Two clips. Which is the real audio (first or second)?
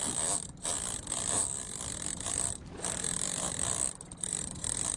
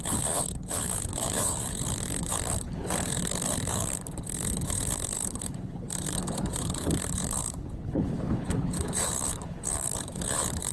first